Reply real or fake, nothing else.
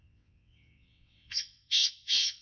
fake